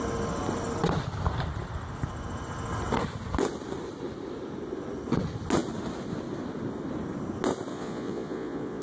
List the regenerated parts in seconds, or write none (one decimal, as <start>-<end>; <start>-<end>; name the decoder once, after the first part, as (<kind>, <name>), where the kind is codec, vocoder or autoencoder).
7.7-8.8 (vocoder, Vocos)